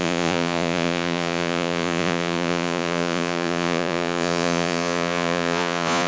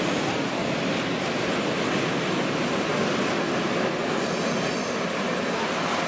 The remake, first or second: first